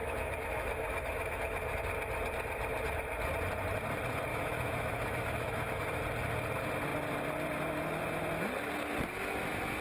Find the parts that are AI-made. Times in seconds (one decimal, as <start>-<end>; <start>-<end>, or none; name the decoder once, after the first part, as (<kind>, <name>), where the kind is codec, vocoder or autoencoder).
0.0-1.8 (autoencoder, DAC-VAE); 4.3-6.0